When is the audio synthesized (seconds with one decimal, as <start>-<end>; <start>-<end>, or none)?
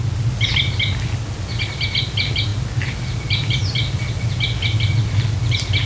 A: none